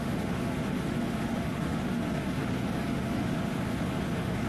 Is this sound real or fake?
fake